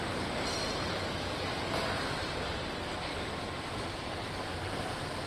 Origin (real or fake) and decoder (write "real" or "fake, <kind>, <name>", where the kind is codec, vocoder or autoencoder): fake, vocoder, BigVGAN v2